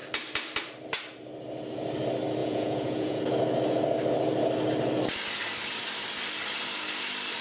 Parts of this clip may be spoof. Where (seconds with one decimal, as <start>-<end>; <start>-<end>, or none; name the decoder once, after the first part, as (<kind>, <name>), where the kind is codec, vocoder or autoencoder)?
2.4-3.2 (vocoder, Vocos)